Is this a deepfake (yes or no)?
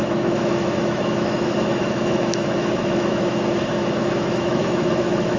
yes